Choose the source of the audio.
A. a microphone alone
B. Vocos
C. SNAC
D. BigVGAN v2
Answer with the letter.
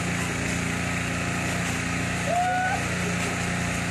A